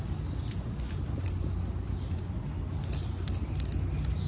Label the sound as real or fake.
real